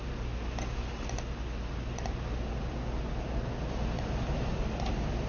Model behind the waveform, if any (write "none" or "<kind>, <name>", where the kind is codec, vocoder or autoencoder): none